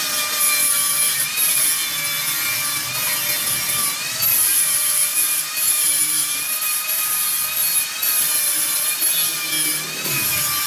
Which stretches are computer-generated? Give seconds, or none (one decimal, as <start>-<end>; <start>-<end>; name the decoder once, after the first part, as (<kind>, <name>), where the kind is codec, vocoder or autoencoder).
0.6-1.7 (vocoder, BigVGAN v2); 4.5-7.3